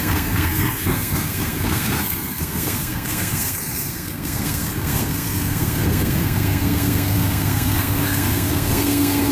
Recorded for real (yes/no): no